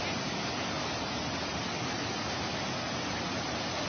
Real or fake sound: real